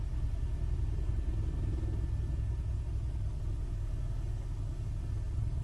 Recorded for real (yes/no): yes